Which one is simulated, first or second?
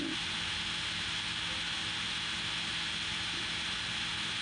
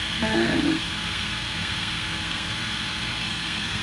second